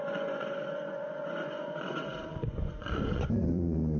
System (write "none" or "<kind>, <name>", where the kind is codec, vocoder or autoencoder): vocoder, Vocos